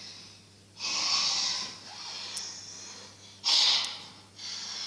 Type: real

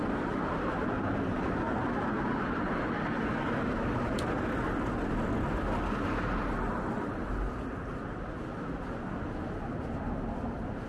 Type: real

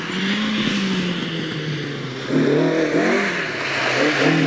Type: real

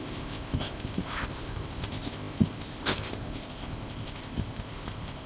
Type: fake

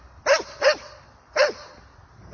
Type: real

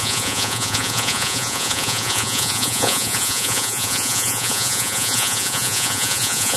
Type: fake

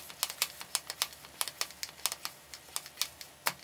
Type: real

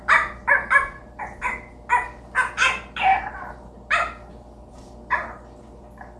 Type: real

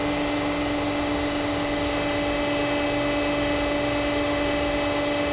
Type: real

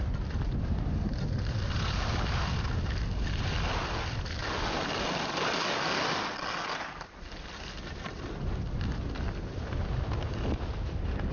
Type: real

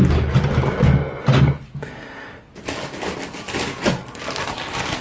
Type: real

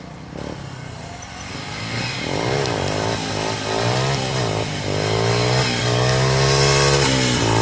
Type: real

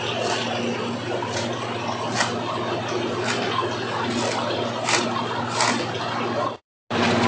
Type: real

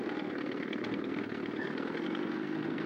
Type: fake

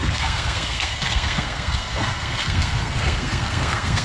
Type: fake